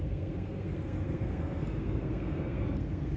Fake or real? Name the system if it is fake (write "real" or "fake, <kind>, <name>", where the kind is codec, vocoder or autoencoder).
fake, codec, SNAC